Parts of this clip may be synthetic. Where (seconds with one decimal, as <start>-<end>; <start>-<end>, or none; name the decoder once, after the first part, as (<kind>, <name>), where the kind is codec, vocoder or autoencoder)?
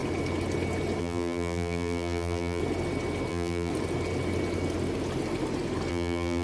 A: 1.0-2.6 (vocoder, BigVGAN v2); 3.3-3.7; 5.9-6.4